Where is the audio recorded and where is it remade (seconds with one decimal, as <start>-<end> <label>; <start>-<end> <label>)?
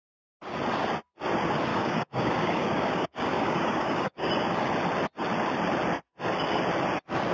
0.0-1.7 recorded; 1.7-4.3 remade; 4.3-7.3 recorded